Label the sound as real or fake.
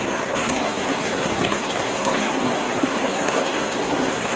fake